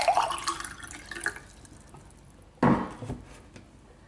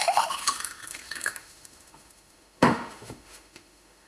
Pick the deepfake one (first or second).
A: second